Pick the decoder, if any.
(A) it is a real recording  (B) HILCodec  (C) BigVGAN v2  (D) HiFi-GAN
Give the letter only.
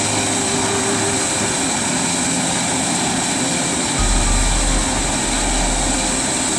A